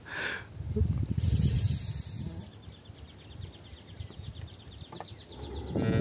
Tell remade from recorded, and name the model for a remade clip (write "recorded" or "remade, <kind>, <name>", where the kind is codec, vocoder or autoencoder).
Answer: recorded